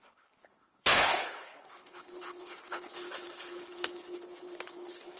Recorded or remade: remade